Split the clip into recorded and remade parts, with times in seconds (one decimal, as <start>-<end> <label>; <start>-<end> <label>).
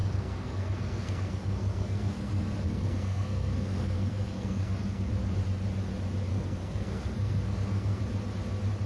0.0-5.1 remade; 5.1-6.3 recorded; 6.3-8.0 remade; 8.0-8.9 recorded